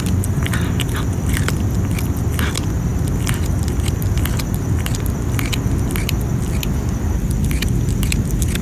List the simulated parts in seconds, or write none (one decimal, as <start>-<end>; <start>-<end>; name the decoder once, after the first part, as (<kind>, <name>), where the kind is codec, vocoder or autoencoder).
none